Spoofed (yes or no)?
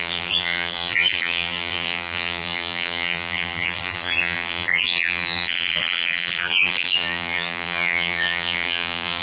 yes